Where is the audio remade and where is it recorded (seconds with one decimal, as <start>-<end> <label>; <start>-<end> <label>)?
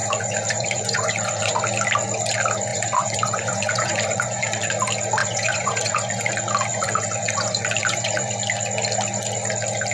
0.0-1.6 remade; 1.6-2.7 recorded; 2.7-4.7 remade; 4.7-5.2 recorded; 5.2-6.3 remade; 6.3-6.7 recorded; 6.7-8.3 remade; 8.3-9.9 recorded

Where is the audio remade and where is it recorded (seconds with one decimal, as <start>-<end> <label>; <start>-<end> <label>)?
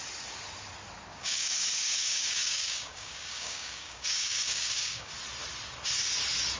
0.0-1.1 recorded; 1.1-5.1 remade; 5.1-6.6 recorded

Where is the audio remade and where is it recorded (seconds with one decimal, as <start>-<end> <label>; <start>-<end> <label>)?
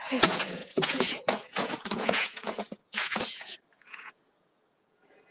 0.0-5.3 remade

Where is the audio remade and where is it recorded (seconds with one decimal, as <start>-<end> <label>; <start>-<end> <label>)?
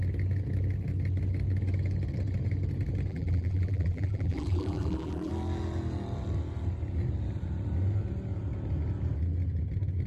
0.0-3.1 recorded; 3.1-5.3 remade; 5.3-10.1 recorded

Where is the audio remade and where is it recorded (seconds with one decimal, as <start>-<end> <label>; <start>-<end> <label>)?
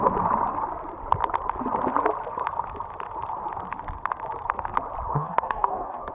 0.0-5.1 recorded; 5.1-6.1 remade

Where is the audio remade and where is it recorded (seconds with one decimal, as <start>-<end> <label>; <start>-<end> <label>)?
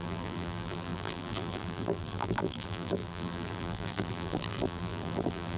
0.0-5.6 remade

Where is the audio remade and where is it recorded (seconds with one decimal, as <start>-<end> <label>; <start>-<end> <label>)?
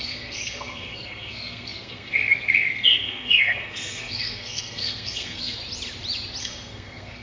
0.0-5.6 remade; 5.6-6.4 recorded; 6.4-7.2 remade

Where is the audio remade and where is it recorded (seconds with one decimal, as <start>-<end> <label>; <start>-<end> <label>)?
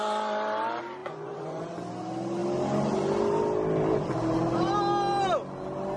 0.0-1.0 recorded; 1.0-1.6 remade; 1.6-6.0 recorded